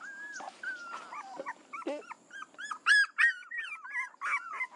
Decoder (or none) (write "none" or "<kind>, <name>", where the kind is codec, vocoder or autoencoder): none